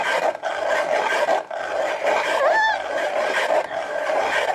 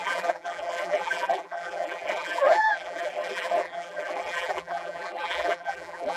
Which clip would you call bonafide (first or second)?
first